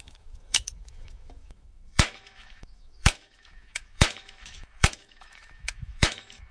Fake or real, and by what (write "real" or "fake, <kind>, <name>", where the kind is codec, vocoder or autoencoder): fake, autoencoder, DAC-VAE